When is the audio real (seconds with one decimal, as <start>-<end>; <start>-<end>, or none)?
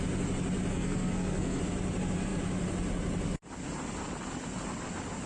0.0-0.7; 1.6-5.3